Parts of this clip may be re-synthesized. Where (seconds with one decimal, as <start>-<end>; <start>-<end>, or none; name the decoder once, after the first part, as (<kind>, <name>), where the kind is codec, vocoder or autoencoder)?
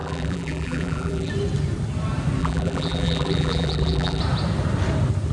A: 0.0-1.3 (vocoder, BigVGAN v2); 2.4-4.2